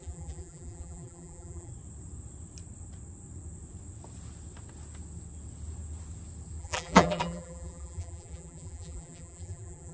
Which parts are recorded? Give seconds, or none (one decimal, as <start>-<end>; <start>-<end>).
1.7-6.6